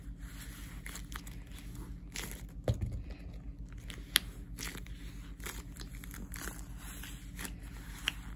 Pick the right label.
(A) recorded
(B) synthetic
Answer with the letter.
A